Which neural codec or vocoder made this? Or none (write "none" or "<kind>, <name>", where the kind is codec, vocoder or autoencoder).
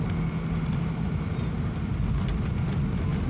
none